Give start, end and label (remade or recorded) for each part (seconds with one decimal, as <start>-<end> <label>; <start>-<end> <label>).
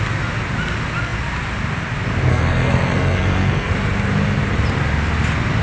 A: 0.0-2.3 recorded; 2.3-3.7 remade; 3.7-5.6 recorded